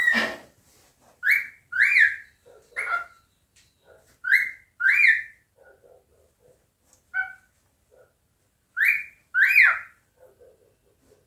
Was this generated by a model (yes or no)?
no